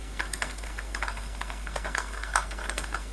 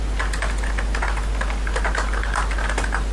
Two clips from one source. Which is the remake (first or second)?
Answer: first